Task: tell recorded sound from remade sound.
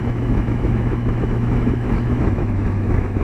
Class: remade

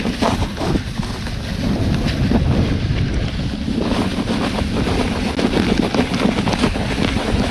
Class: recorded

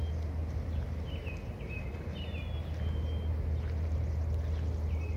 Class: recorded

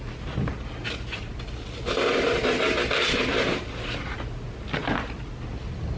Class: recorded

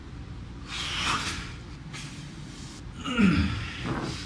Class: recorded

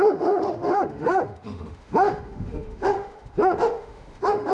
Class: remade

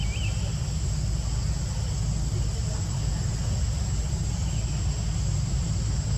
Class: recorded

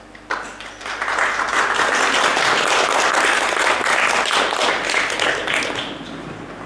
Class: recorded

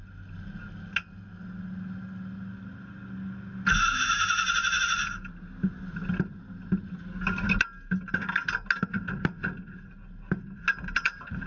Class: recorded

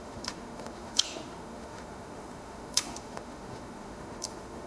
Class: remade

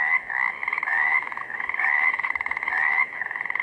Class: remade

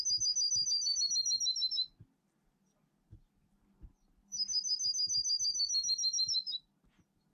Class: recorded